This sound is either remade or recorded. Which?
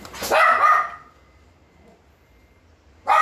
recorded